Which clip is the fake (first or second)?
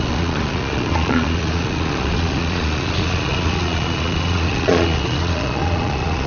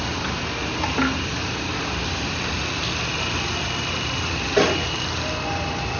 first